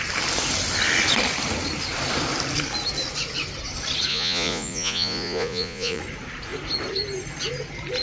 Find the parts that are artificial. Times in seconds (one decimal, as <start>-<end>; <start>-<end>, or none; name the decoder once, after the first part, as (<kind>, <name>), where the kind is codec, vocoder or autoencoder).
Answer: 4.1-6.0 (vocoder, Vocos)